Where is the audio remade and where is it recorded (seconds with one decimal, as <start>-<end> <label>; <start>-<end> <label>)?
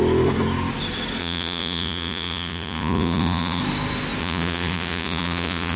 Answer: 0.0-1.2 recorded; 1.2-3.6 remade; 3.6-4.2 recorded; 4.2-5.8 remade